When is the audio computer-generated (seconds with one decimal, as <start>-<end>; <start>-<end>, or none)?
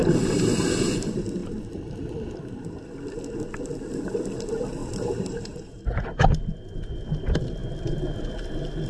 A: 4.8-6.0